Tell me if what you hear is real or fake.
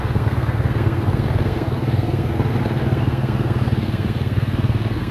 fake